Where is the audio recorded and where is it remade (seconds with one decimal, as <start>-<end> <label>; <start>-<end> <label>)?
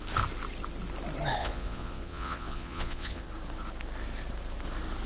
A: 0.0-1.4 recorded; 1.4-3.3 remade; 3.3-5.1 recorded